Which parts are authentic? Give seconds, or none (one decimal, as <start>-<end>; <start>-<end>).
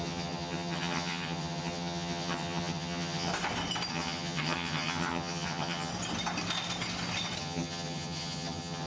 3.3-3.9; 5.9-7.4